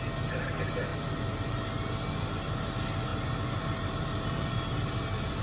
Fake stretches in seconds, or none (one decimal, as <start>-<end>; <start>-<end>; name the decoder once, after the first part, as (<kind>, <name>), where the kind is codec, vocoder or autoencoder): 0.9-1.7 (vocoder, BigVGAN v2); 3.1-4.6